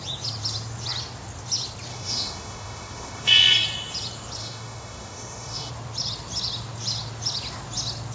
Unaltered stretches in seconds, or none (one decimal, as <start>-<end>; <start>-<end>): 0.0-1.9; 3.3-4.4; 5.7-8.1